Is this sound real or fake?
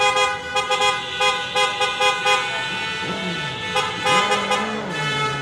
real